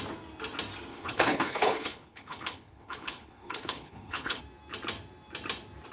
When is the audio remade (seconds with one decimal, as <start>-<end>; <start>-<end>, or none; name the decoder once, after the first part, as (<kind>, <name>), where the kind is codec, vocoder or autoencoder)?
0.9-4.4 (codec, HILCodec)